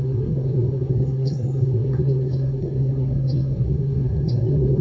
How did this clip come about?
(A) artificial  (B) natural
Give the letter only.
A